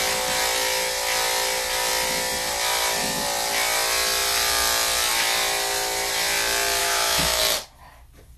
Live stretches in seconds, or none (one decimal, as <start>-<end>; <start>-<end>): 0.0-6.8; 7.4-8.4

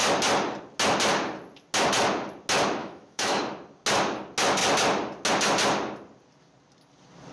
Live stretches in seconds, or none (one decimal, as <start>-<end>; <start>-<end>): 0.0-2.8; 3.4-7.3